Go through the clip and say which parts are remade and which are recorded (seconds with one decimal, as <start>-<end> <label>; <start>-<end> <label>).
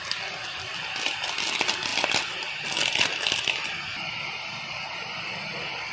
0.0-5.9 recorded